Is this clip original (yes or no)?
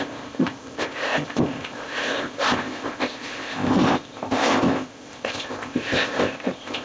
no